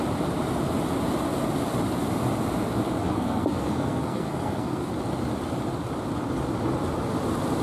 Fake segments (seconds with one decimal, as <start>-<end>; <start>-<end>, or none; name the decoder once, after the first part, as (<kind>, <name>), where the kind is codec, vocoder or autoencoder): 3.0-4.9 (codec, SNAC)